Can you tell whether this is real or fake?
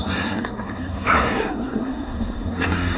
fake